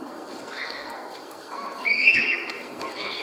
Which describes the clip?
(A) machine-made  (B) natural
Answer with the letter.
A